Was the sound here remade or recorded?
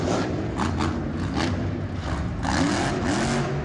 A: recorded